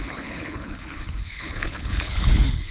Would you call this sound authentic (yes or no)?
no